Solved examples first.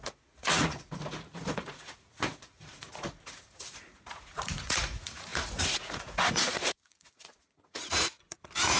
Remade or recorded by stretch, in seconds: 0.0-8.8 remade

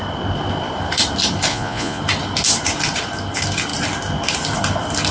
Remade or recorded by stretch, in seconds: 0.0-1.5 recorded; 1.5-2.0 remade; 2.0-5.1 recorded

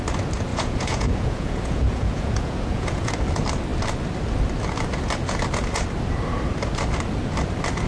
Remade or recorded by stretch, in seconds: 0.0-0.5 recorded; 0.5-3.1 remade; 3.1-7.9 recorded

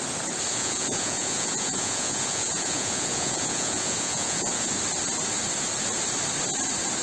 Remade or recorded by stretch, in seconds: 0.0-0.5 recorded; 0.5-4.7 remade; 4.7-7.0 recorded

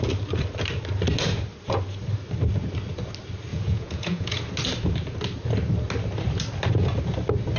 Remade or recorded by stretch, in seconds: 0.0-3.5 recorded; 3.5-4.4 remade; 4.4-7.6 recorded